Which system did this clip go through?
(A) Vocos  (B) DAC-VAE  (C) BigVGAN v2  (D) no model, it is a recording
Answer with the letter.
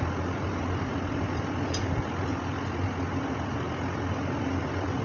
D